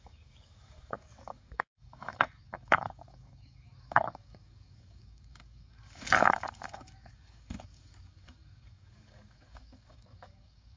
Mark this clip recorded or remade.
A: remade